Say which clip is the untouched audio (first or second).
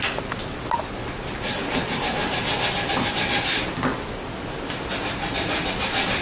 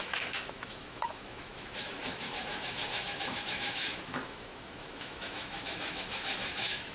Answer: first